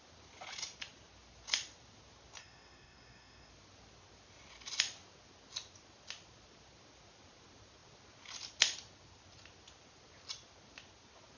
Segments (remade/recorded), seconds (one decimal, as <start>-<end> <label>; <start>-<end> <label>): 0.0-2.4 recorded; 2.4-3.5 remade; 3.5-11.4 recorded